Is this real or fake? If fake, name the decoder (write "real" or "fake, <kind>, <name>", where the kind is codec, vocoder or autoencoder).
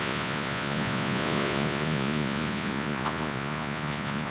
fake, vocoder, Vocos